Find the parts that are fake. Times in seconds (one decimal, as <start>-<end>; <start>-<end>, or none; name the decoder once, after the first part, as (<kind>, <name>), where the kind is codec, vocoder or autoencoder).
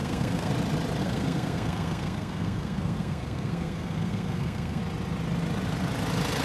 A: 0.0-0.5 (codec, SNAC); 1.0-4.8